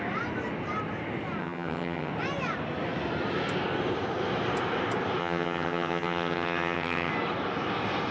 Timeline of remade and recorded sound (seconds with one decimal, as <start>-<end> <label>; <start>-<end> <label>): 0.0-1.4 recorded; 1.4-2.1 remade; 2.1-5.2 recorded; 5.2-7.1 remade; 7.1-8.1 recorded